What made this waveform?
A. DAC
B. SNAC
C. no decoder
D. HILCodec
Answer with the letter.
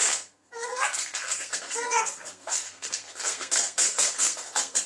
B